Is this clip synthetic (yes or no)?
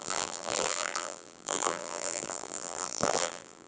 yes